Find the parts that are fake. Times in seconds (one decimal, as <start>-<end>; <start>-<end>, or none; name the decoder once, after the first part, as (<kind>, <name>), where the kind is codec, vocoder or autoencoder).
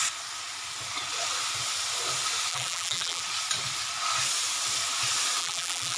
2.5-3.2 (vocoder, BigVGAN v2); 5.4-6.0